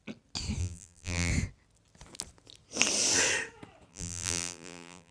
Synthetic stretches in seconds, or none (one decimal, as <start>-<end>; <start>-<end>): 0.6-1.3; 3.9-5.1